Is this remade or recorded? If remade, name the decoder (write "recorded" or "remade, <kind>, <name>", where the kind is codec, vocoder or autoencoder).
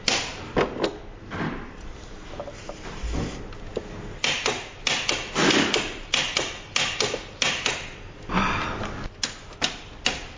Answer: recorded